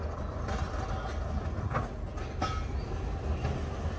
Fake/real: real